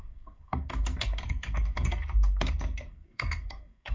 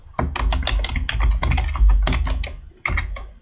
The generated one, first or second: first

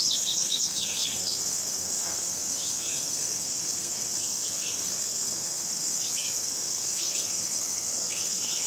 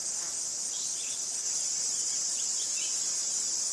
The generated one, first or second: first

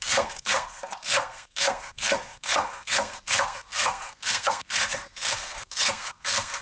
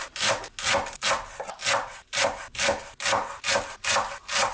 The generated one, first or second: first